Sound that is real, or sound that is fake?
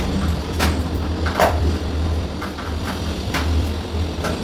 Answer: fake